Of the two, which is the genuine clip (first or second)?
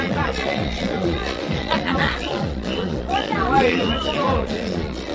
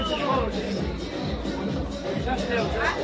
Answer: second